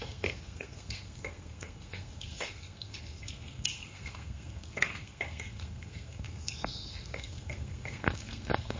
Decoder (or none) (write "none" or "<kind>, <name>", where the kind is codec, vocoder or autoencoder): codec, SNAC